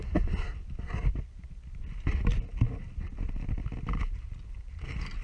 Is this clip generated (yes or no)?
no